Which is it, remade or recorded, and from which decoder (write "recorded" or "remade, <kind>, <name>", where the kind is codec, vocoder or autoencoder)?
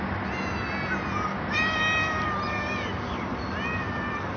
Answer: recorded